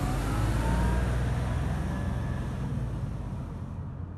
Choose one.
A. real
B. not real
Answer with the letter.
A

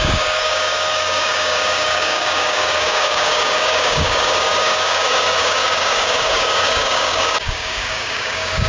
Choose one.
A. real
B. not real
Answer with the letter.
B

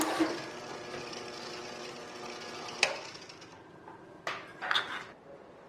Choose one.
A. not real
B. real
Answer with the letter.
B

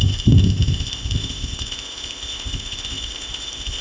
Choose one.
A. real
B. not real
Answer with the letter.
B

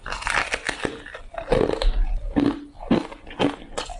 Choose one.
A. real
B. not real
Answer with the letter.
A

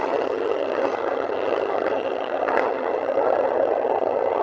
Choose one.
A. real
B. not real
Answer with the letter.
B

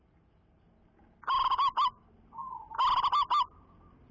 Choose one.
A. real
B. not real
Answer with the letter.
A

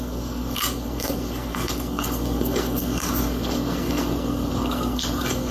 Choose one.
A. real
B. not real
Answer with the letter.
B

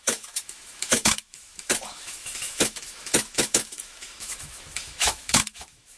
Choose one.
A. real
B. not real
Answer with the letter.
B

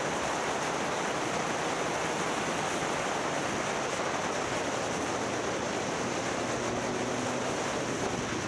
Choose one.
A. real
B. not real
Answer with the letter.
A